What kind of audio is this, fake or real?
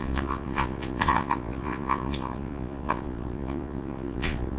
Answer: fake